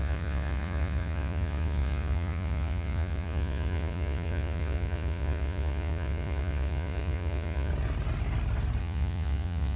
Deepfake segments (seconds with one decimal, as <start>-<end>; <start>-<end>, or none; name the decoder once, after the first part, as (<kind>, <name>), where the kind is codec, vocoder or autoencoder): 0.0-7.7 (vocoder, Vocos); 8.8-9.8